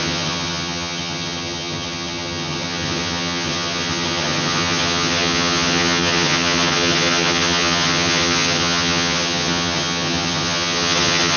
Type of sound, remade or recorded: remade